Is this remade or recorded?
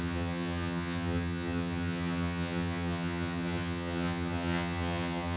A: remade